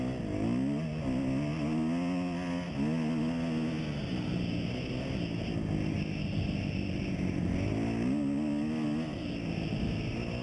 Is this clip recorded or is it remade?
recorded